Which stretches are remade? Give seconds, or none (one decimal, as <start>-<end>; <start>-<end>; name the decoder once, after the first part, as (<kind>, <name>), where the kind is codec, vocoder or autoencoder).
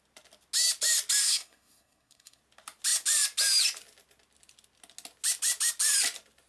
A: 1.2-2.4 (codec, SNAC)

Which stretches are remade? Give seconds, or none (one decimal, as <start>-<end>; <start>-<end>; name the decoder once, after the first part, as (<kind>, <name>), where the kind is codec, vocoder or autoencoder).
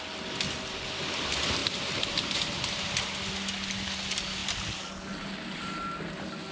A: 1.6-3.1 (vocoder, BigVGAN v2)